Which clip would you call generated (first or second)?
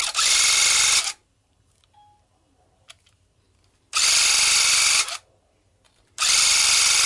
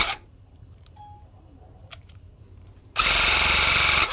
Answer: second